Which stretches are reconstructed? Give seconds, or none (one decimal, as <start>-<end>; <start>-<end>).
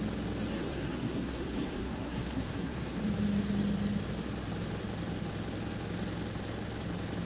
0.5-3.0